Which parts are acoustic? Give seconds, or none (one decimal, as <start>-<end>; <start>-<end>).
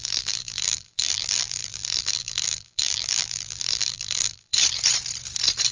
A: 4.5-5.7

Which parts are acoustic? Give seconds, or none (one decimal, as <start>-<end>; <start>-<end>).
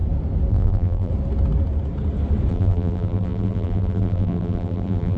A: 0.0-0.5; 1.1-2.5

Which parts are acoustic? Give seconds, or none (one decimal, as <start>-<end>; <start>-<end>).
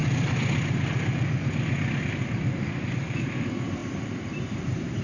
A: 0.0-2.0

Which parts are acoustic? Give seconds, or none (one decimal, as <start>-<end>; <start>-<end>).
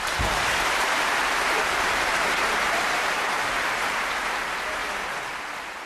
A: 4.8-5.9